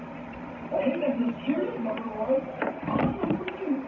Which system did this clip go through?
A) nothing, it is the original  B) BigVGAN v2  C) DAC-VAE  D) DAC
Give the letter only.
B